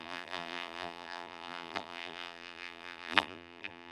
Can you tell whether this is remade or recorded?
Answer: remade